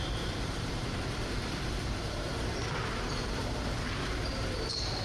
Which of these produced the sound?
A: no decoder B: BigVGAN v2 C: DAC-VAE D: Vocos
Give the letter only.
B